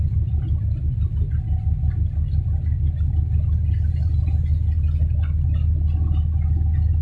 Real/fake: real